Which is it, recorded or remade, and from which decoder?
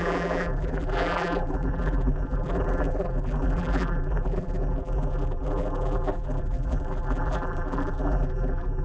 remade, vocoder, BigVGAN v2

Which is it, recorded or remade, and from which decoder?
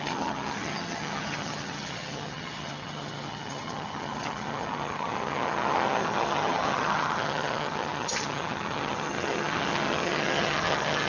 remade, vocoder, HiFi-GAN